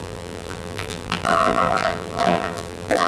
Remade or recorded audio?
remade